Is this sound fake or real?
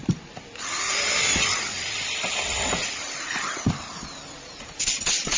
real